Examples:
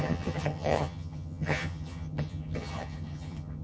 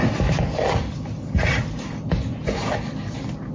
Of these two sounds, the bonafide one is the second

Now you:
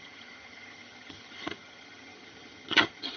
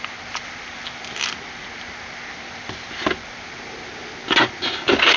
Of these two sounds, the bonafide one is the second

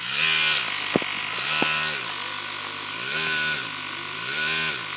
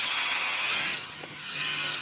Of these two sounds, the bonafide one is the first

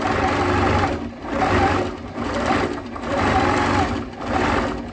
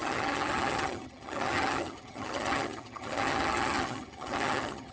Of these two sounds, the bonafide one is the first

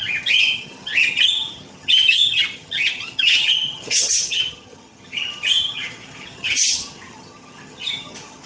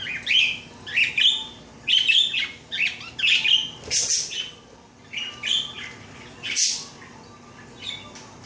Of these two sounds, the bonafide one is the second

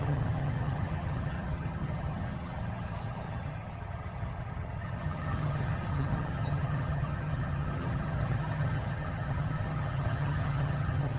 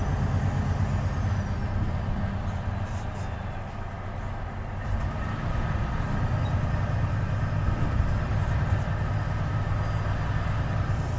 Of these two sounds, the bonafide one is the second